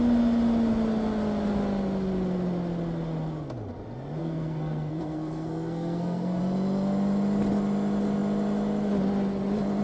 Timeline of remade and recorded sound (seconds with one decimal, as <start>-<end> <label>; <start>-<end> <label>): 0.0-4.2 recorded; 4.2-6.4 remade; 6.4-9.8 recorded